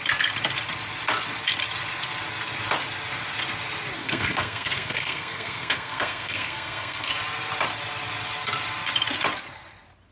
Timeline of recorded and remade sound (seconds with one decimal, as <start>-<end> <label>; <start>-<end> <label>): 0.0-4.0 recorded; 4.0-7.1 remade; 7.1-10.1 recorded